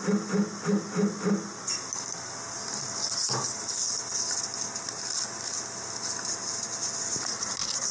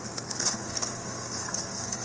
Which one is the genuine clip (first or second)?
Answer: first